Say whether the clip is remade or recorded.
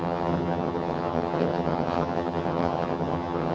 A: remade